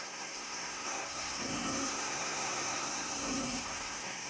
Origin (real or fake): fake